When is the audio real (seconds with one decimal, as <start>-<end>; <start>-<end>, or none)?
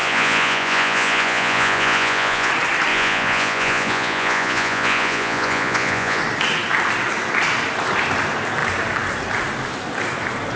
2.5-2.9; 6.2-10.6